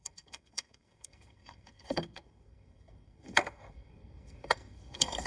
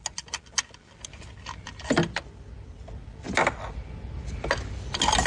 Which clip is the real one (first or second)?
second